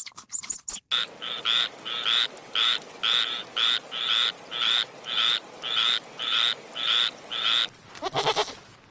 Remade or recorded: recorded